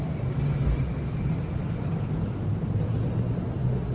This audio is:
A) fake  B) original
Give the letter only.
B